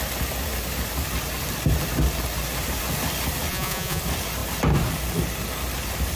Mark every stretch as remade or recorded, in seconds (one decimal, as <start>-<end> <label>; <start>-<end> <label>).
0.0-3.5 recorded; 3.5-4.0 remade; 4.0-6.2 recorded